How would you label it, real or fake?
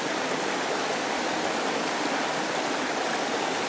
real